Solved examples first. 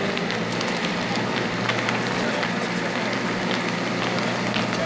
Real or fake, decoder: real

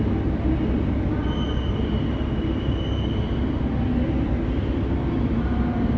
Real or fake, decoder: real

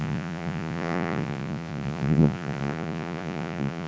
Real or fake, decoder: fake, vocoder, Vocos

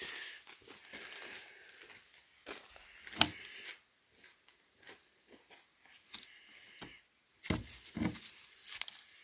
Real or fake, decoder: real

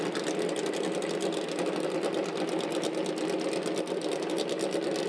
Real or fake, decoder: real